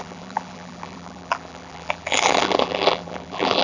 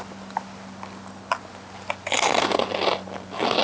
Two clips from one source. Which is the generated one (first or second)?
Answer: first